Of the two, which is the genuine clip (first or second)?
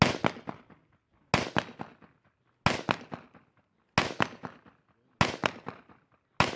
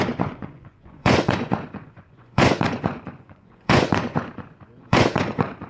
first